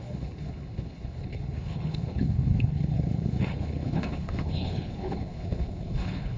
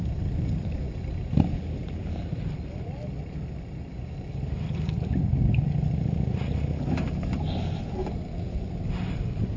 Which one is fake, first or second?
first